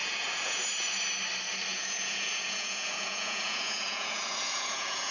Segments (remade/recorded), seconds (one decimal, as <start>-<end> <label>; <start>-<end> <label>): 0.0-0.6 remade; 0.6-1.7 recorded; 1.7-5.1 remade